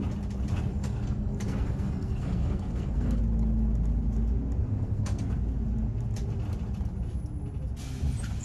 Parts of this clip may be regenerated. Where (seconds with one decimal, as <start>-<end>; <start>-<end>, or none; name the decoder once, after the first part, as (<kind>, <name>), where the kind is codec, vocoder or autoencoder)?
0.7-3.2 (codec, SNAC); 4.6-5.4

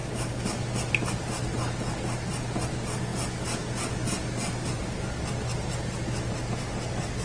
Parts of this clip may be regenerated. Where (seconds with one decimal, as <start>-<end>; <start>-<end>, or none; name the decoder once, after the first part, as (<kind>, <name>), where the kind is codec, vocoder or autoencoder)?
none

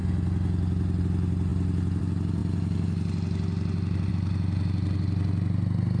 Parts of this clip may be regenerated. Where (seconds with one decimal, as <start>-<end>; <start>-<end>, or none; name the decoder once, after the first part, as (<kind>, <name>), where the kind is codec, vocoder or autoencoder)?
none

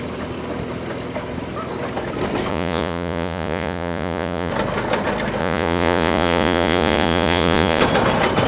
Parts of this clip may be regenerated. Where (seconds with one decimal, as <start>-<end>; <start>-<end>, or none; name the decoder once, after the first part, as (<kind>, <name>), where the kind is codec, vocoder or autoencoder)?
2.5-4.5 (vocoder, Vocos); 5.4-7.8

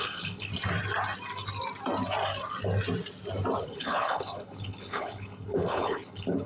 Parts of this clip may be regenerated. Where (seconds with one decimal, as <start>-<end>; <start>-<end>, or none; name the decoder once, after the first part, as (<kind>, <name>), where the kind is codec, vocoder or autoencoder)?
0.0-0.5 (codec, HILCodec); 3.6-6.5

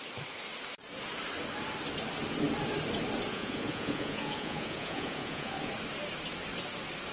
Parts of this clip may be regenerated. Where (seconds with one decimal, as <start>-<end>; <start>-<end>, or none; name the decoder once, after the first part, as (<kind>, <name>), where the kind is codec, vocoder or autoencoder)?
3.3-5.7 (vocoder, Vocos)